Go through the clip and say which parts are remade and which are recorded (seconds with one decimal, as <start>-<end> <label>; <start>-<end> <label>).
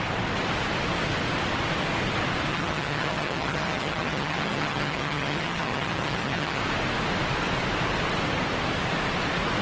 0.0-2.5 recorded; 2.5-6.6 remade; 6.6-9.6 recorded